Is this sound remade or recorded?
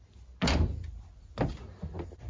recorded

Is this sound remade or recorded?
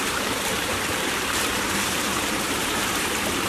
remade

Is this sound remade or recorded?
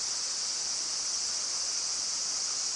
recorded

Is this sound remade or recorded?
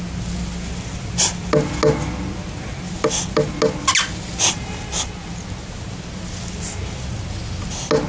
recorded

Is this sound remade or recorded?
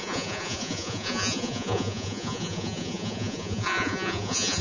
remade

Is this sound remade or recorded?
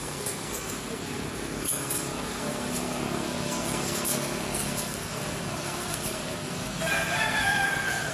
remade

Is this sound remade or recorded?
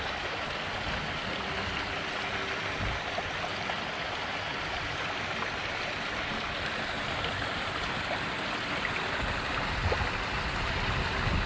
recorded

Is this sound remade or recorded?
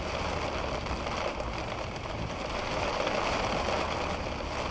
recorded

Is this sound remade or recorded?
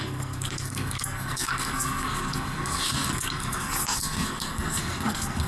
remade